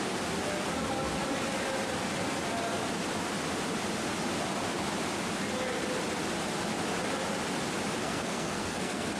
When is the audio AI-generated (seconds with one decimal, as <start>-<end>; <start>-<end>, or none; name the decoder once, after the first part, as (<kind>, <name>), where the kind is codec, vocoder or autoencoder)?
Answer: 8.0-9.2 (codec, SNAC)